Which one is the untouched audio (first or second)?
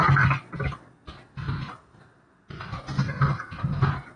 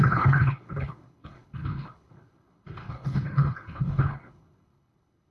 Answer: first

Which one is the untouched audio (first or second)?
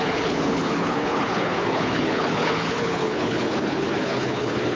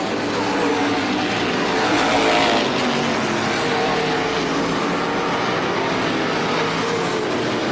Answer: second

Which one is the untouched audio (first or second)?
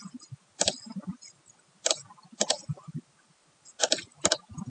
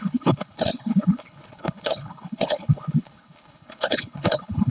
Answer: first